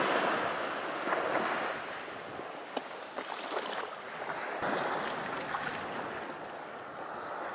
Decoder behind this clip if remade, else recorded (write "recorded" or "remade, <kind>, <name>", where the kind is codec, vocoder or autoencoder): recorded